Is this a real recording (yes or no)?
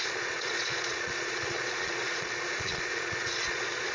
no